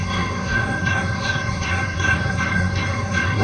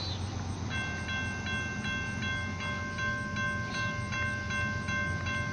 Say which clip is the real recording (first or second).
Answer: second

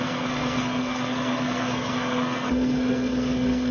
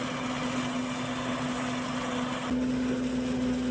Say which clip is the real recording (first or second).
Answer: second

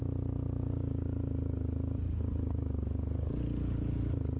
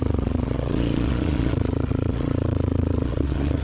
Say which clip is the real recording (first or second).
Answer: first